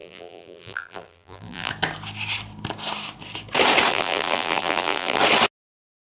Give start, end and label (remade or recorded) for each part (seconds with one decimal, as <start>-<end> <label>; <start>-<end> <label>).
0.0-1.7 remade; 1.7-3.9 recorded; 3.9-5.2 remade; 5.2-6.1 recorded